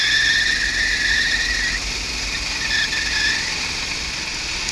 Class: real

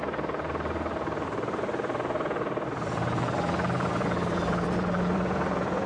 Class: fake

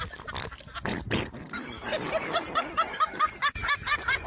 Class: real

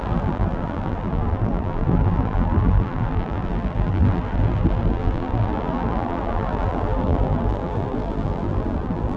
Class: fake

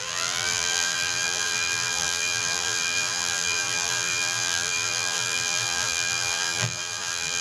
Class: fake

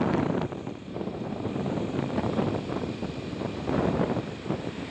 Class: fake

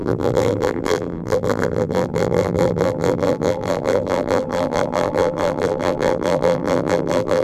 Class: fake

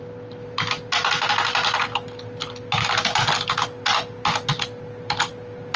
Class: real